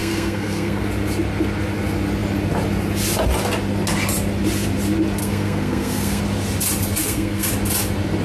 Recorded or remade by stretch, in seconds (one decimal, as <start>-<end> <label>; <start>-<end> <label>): 0.0-0.9 remade; 0.9-5.2 recorded; 5.2-6.2 remade; 6.2-7.0 recorded; 7.0-7.5 remade; 7.5-8.2 recorded